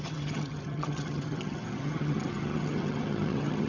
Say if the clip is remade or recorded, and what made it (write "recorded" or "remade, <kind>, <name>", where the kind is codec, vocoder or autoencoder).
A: remade, vocoder, HiFi-GAN